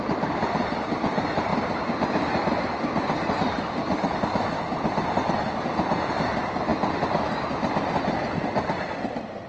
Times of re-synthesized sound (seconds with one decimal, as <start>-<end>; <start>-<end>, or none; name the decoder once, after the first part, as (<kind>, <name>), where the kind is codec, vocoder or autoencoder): none